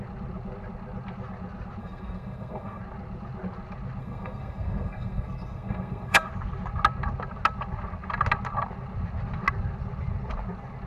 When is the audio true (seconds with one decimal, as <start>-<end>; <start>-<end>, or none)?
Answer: 0.0-1.8; 2.8-4.0; 6.3-10.9